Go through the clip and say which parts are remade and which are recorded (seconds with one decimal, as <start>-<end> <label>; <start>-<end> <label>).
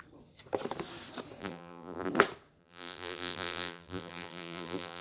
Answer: 0.0-1.4 recorded; 1.4-2.1 remade; 2.1-2.6 recorded; 2.6-5.0 remade